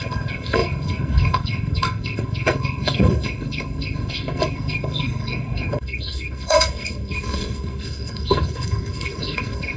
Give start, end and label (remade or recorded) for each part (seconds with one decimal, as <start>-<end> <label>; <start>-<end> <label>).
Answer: 0.0-9.8 remade